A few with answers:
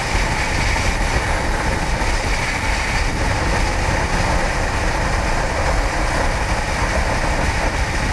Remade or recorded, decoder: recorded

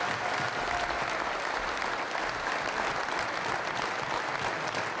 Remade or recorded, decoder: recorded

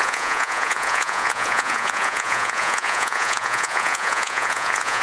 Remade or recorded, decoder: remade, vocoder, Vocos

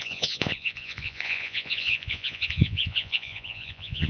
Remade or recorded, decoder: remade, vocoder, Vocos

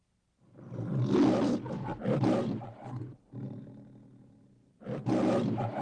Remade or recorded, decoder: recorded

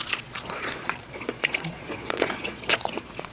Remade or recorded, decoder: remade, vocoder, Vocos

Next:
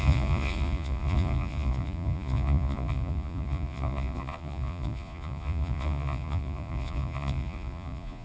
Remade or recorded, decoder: remade, vocoder, Vocos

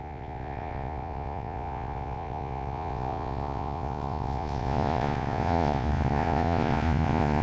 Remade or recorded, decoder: remade, vocoder, Vocos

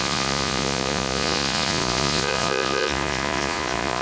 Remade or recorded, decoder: remade, vocoder, Vocos